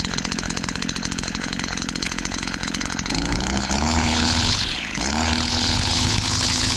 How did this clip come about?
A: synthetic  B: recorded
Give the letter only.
A